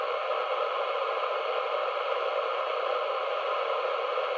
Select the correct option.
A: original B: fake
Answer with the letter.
A